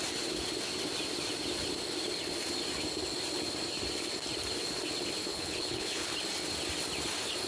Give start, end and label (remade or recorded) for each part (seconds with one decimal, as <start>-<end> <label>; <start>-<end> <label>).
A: 0.0-5.3 recorded; 5.3-6.1 remade; 6.1-7.5 recorded